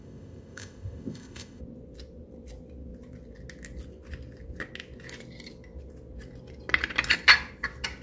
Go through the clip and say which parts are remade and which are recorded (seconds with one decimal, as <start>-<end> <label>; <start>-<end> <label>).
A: 0.0-1.6 remade; 1.6-8.0 recorded